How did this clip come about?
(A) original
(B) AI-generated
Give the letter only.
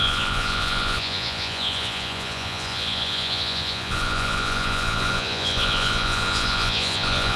B